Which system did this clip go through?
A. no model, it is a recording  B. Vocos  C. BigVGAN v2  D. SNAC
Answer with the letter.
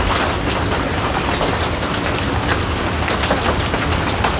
A